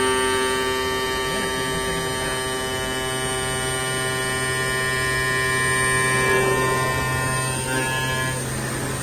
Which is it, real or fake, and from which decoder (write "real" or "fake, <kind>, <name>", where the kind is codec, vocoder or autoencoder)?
real